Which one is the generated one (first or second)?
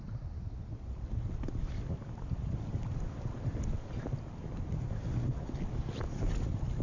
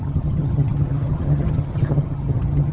second